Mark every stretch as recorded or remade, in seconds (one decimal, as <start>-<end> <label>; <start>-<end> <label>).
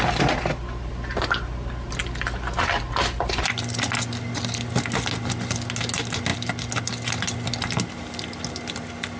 0.0-9.2 recorded